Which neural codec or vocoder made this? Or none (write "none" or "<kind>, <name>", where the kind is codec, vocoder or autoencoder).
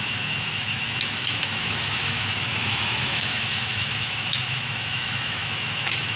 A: autoencoder, DAC-VAE